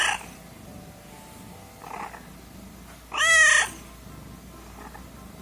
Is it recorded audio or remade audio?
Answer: recorded